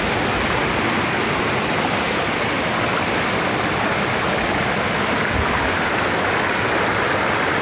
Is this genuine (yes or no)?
yes